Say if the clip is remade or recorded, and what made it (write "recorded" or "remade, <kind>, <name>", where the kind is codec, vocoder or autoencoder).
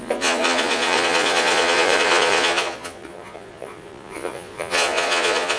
remade, vocoder, Vocos